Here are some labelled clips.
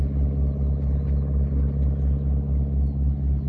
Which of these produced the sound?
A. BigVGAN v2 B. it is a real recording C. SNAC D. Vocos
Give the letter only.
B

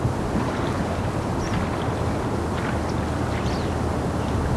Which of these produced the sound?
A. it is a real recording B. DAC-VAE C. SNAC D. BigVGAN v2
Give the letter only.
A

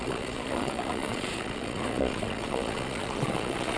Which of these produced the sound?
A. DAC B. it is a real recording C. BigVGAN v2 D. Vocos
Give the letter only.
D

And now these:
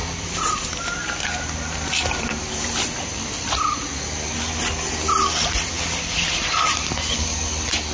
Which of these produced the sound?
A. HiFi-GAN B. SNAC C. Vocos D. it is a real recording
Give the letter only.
D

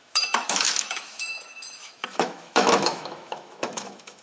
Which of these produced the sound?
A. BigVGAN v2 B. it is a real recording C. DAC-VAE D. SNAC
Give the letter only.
C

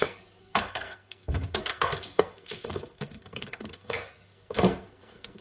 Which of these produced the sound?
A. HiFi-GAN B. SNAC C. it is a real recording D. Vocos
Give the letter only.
B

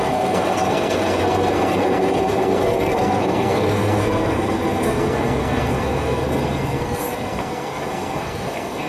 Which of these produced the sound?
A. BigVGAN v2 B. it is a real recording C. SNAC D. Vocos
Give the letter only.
C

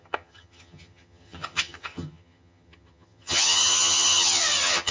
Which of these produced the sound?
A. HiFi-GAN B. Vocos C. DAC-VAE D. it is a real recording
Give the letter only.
A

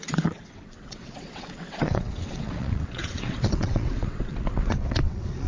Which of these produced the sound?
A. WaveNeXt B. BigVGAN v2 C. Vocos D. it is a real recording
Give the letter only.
A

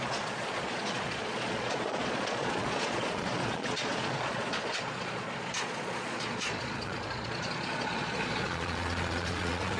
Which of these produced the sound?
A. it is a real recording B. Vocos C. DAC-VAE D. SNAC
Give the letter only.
B